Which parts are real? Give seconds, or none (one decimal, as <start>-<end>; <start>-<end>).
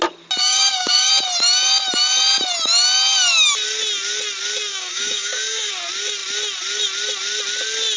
0.0-0.4; 1.1-4.7; 5.7-8.0